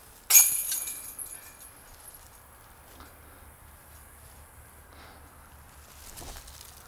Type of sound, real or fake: real